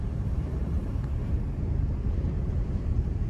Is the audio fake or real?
fake